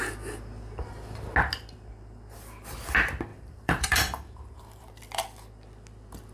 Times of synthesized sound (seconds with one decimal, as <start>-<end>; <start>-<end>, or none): 3.3-5.0